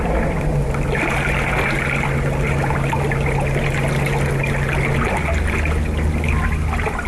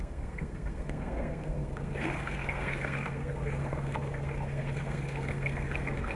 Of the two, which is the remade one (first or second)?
second